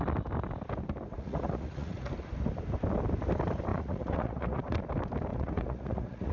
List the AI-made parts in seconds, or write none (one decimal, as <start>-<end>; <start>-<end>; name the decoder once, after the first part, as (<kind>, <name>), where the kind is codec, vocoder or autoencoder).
1.1-2.1 (vocoder, Vocos); 3.7-4.8; 5.3-6.3

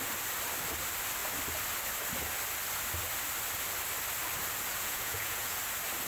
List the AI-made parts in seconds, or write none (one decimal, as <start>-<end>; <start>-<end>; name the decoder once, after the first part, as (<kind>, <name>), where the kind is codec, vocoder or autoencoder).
4.7-5.6 (vocoder, Vocos)

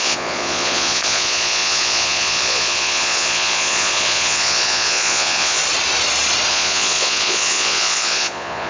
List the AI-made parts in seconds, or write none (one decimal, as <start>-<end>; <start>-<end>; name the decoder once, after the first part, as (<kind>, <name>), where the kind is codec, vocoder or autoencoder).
0.0-5.6 (vocoder, Vocos); 6.5-8.7

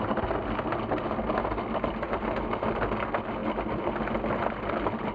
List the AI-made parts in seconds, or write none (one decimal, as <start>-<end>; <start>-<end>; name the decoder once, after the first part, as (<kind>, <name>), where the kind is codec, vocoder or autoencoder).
none

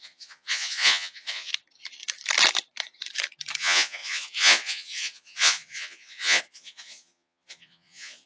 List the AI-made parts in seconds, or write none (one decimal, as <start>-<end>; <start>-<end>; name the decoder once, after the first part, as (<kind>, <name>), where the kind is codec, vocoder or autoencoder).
0.0-1.5 (vocoder, Vocos); 3.6-8.3

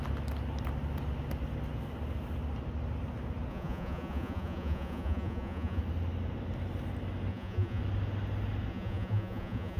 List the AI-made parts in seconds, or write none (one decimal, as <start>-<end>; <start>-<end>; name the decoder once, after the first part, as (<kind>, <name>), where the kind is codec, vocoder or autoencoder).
3.5-5.8 (vocoder, Vocos); 7.3-7.8; 8.7-9.8

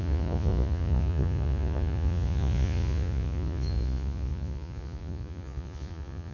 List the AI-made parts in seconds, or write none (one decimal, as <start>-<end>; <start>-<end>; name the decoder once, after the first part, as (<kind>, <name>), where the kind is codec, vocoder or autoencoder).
0.0-6.3 (vocoder, Vocos)

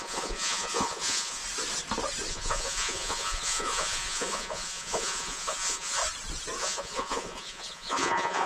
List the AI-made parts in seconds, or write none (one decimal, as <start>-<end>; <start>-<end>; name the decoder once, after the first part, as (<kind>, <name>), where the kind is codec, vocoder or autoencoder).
0.0-1.4 (vocoder, Vocos); 2.3-6.0; 6.6-8.5